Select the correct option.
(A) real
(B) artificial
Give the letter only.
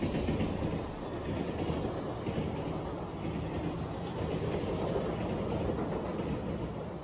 A